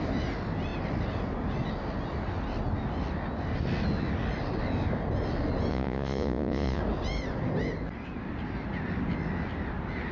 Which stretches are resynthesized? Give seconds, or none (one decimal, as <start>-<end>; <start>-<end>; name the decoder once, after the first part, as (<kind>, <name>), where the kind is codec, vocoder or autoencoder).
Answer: 5.7-6.8 (vocoder, Vocos)